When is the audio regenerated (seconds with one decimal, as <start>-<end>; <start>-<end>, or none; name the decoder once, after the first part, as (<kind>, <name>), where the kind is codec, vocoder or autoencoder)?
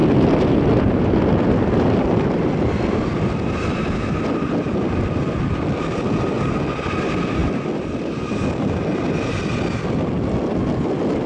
none